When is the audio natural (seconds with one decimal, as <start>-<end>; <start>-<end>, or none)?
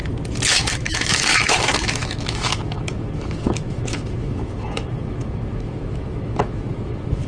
0.0-0.5